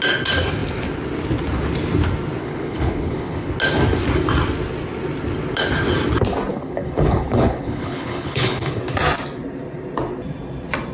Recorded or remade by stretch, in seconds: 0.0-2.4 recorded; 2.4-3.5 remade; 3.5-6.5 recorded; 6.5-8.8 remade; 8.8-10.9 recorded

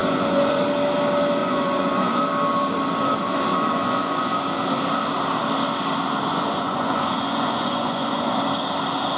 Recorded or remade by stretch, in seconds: 0.0-0.6 remade; 0.6-1.4 recorded; 1.4-2.2 remade; 2.2-3.5 recorded; 3.5-4.4 remade; 4.4-6.3 recorded; 6.3-8.4 remade; 8.4-9.2 recorded